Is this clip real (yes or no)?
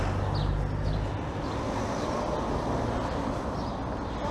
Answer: yes